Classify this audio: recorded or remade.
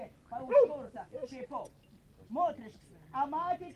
recorded